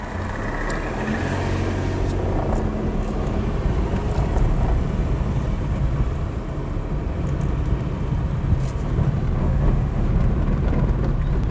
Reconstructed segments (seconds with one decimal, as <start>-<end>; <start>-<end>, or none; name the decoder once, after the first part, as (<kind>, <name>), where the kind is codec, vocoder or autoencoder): 9.4-10.1 (autoencoder, DAC-VAE)